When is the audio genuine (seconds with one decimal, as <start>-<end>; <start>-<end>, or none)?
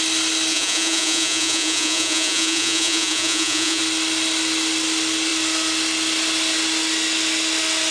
0.0-0.5; 3.8-7.9